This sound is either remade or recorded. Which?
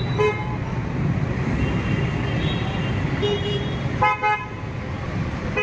recorded